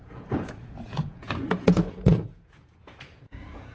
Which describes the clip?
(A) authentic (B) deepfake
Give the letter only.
B